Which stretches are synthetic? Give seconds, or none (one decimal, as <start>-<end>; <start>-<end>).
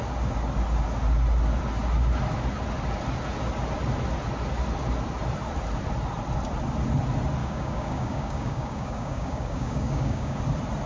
7.4-10.4